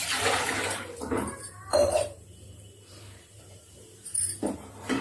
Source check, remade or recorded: remade